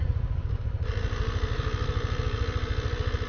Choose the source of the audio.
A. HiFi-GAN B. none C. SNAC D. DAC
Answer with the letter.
B